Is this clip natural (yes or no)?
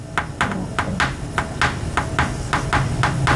yes